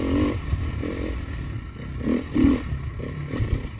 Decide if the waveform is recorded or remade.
recorded